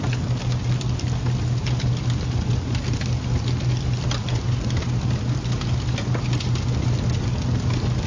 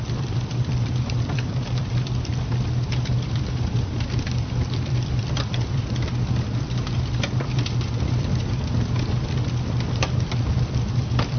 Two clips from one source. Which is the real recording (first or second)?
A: first